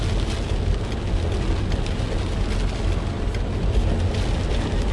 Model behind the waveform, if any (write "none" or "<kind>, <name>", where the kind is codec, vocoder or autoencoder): none